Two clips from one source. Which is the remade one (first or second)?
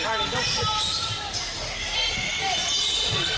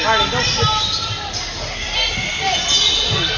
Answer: first